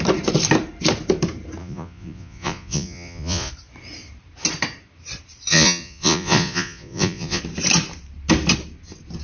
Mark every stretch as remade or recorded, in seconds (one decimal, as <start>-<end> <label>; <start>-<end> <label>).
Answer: 0.0-1.6 recorded; 1.6-3.5 remade; 3.5-5.5 recorded; 5.5-7.4 remade; 7.4-9.2 recorded